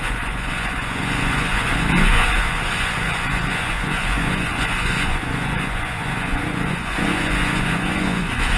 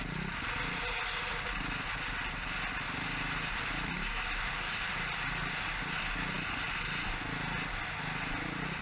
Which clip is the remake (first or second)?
first